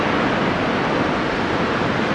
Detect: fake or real real